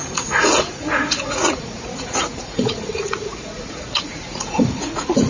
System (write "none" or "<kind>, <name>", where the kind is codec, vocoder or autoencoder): vocoder, Vocos